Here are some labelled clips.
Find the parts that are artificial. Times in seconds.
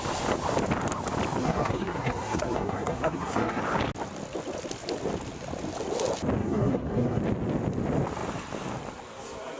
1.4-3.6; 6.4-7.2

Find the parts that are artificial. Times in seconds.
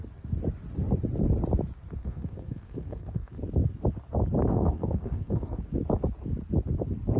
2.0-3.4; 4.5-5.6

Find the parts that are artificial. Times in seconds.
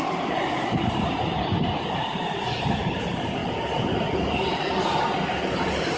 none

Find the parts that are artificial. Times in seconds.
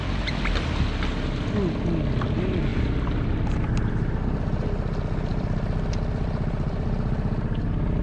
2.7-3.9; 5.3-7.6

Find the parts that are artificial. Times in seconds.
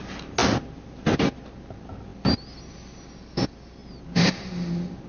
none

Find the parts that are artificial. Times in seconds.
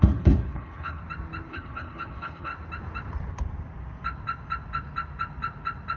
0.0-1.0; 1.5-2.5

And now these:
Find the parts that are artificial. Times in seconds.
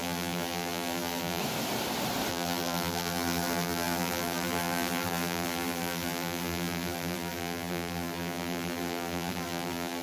0.0-1.4; 2.3-10.0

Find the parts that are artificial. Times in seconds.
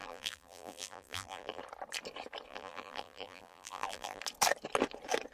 0.0-1.6; 2.5-4.2